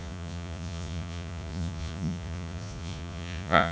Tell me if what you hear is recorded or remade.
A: remade